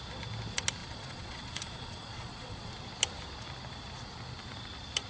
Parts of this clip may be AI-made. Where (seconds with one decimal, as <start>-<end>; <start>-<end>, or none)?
0.8-2.7